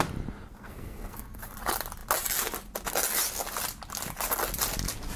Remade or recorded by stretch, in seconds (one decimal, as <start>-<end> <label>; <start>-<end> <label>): 0.0-0.5 recorded; 0.5-1.5 remade; 1.5-5.2 recorded